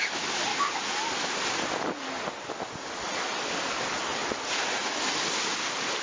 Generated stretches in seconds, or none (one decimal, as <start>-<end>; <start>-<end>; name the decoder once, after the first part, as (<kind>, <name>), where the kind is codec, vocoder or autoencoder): none